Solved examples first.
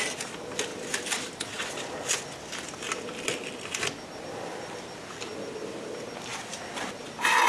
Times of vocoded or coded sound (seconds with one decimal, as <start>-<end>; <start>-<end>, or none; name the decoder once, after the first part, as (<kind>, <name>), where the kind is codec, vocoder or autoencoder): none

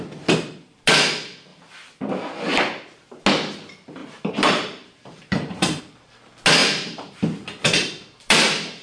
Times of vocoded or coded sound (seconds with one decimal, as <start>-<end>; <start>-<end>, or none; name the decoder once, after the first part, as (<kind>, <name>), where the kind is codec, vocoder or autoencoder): 4.0-5.8 (vocoder, BigVGAN v2); 6.6-7.1

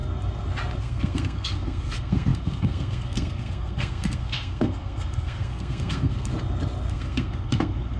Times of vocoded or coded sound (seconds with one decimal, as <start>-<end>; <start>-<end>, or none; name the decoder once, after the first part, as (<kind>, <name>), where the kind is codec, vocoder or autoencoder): 0.8-6.3 (codec, SNAC); 6.9-8.0

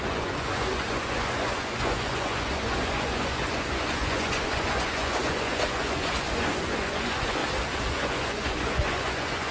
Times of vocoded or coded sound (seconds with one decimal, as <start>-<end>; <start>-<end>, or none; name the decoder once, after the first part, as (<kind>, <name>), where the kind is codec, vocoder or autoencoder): 0.0-7.4 (vocoder, Vocos); 7.9-9.5